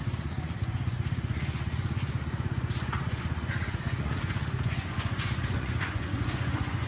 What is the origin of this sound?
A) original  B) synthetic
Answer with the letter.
B